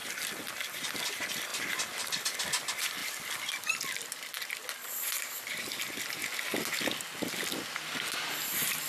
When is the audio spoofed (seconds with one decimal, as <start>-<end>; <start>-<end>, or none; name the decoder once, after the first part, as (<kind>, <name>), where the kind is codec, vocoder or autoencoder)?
none